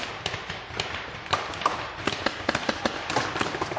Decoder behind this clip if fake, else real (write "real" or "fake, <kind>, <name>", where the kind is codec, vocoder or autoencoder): real